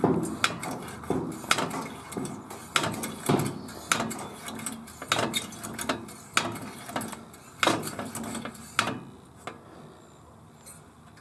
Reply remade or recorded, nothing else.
recorded